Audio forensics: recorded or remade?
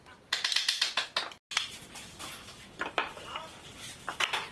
recorded